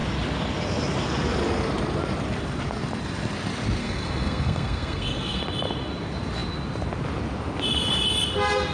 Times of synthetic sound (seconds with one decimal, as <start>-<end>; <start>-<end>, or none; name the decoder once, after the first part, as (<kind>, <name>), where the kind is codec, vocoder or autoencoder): 3.8-5.4 (codec, SNAC)